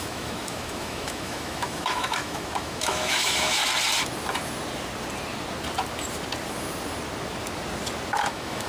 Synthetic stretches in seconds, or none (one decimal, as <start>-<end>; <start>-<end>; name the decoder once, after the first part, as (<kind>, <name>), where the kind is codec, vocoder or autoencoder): 0.0-3.6 (autoencoder, DAC-VAE); 8.2-8.7